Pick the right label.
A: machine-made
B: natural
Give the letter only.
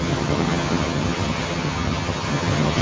A